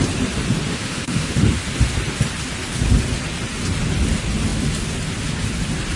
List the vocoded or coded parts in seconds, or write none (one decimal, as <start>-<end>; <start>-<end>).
0.7-1.6